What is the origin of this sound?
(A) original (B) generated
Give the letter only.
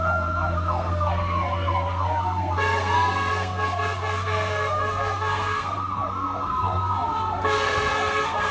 B